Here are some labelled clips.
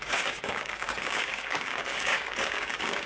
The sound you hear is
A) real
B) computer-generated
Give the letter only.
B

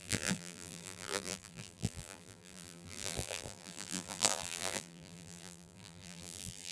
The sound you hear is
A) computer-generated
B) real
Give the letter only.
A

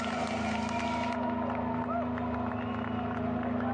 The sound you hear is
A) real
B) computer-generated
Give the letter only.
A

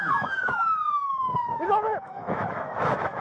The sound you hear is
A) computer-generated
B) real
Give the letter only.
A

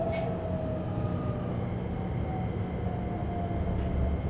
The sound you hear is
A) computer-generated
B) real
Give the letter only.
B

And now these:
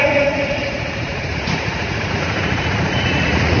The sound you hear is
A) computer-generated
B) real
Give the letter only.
A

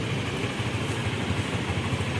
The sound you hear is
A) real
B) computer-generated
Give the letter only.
A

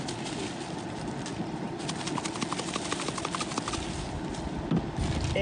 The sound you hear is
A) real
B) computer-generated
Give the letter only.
A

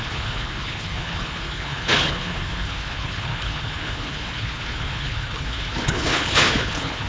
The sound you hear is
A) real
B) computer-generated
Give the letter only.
B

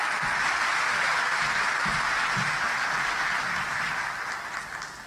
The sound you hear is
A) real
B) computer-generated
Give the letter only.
A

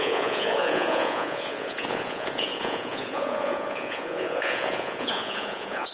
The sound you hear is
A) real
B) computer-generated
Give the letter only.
B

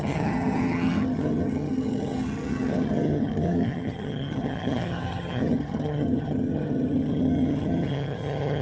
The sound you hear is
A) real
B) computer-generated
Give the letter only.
B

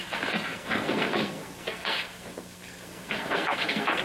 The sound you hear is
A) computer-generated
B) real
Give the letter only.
A